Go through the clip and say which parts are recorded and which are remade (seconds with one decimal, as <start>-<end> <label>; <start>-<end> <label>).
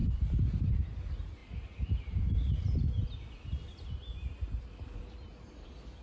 0.0-6.0 recorded